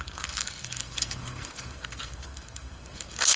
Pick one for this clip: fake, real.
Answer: fake